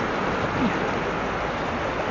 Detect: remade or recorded recorded